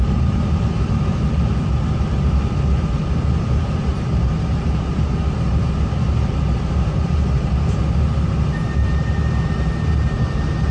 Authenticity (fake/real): fake